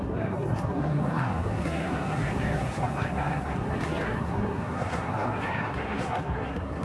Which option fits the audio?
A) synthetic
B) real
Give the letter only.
A